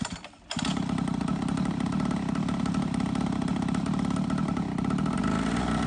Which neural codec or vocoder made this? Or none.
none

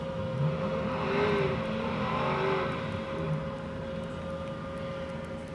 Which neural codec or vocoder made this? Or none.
none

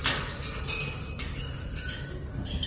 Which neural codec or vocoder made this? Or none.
none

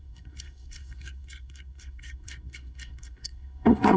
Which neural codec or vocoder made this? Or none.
codec, SNAC